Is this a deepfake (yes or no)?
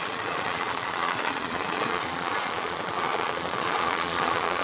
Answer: yes